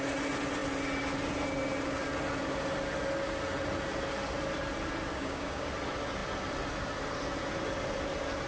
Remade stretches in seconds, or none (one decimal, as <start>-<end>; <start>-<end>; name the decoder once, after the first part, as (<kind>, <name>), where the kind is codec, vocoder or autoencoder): 5.1-5.7 (codec, DAC)